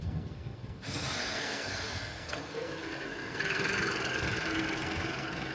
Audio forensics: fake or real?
fake